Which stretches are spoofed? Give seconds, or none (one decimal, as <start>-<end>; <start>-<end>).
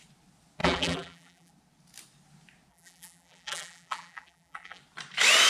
0.6-1.5; 2.7-4.8